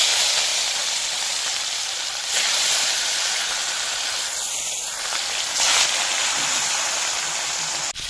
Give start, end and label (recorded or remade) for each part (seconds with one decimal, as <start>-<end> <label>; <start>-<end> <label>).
0.0-0.5 recorded; 0.5-3.3 remade; 3.3-8.1 recorded